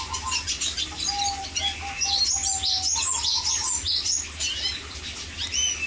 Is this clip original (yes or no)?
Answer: yes